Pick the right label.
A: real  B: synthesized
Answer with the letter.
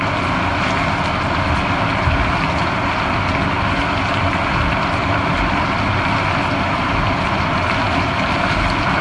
A